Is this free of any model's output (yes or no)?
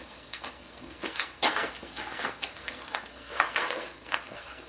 no